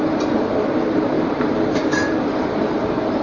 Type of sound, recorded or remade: remade